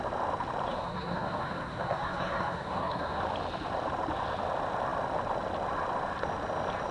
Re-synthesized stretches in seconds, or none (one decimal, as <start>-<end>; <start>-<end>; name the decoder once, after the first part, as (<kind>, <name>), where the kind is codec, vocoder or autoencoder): 0.7-3.2 (codec, SNAC)